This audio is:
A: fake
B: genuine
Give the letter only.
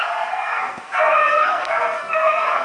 A